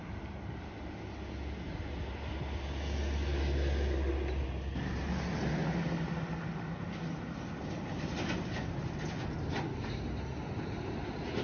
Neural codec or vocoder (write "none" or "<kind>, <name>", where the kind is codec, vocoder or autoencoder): none